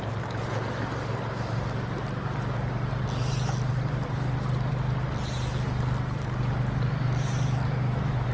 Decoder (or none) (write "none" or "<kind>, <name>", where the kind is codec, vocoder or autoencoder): none